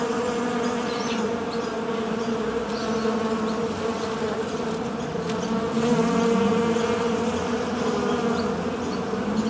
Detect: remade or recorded recorded